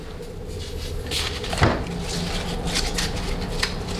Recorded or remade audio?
recorded